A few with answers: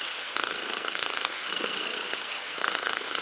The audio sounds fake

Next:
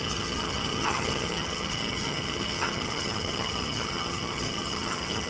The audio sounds fake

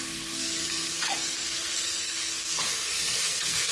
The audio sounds fake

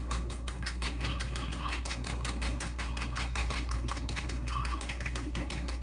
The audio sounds fake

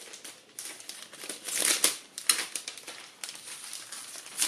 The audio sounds real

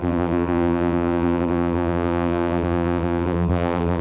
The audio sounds fake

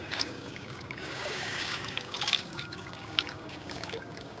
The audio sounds fake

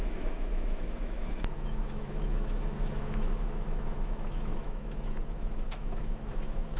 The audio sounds fake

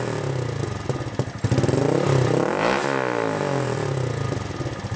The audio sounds real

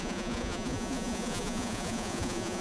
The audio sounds fake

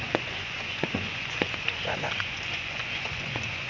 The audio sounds fake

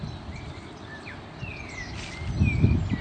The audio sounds real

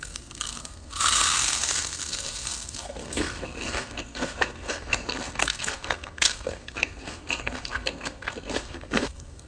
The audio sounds fake